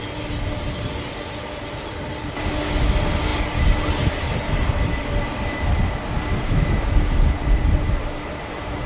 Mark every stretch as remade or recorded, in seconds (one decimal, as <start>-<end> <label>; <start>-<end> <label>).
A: 0.0-8.9 recorded

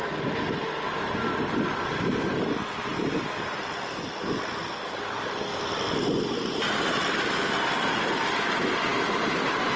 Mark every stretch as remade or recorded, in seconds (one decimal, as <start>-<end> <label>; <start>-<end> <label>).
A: 0.0-9.8 recorded